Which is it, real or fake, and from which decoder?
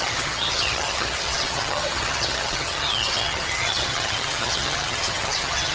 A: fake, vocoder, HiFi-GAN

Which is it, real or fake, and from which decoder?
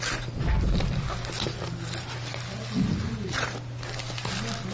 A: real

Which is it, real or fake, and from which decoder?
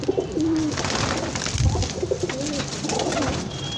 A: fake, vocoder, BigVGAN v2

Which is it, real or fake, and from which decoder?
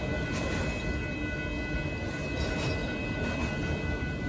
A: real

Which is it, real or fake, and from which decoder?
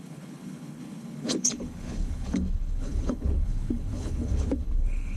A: fake, codec, HILCodec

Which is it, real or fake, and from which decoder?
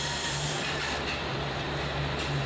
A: fake, vocoder, BigVGAN v2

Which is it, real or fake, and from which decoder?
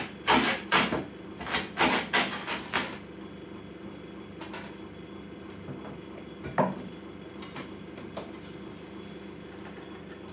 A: real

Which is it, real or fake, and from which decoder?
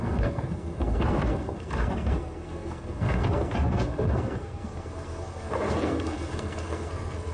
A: fake, codec, SNAC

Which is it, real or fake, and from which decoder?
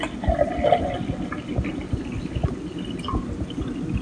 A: real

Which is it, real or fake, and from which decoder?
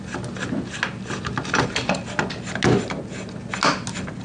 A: real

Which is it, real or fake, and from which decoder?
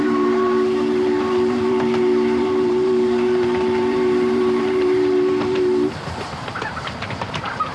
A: fake, vocoder, BigVGAN v2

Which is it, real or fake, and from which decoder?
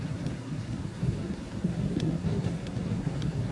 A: fake, codec, SNAC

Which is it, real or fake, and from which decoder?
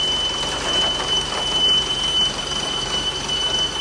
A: fake, vocoder, BigVGAN v2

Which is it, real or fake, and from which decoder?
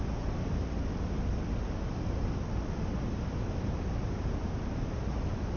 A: real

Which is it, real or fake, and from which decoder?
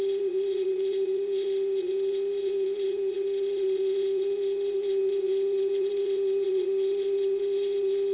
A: fake, vocoder, Vocos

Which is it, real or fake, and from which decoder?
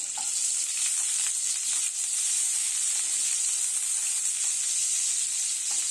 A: real